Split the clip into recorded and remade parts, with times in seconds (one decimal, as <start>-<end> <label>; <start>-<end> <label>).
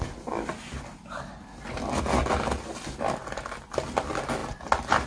0.0-5.1 recorded